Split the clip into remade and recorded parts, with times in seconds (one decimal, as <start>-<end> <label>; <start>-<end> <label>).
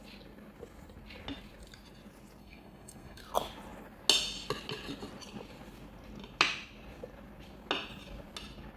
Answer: 0.0-2.4 recorded; 2.4-3.2 remade; 3.2-8.8 recorded